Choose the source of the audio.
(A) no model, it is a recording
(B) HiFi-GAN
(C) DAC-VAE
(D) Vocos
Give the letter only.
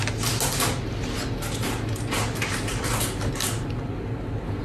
A